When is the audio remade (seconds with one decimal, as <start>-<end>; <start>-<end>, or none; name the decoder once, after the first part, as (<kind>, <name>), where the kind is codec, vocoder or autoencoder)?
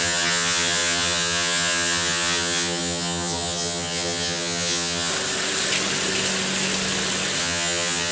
0.0-5.1 (vocoder, HiFi-GAN); 7.4-8.1